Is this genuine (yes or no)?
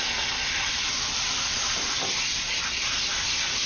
no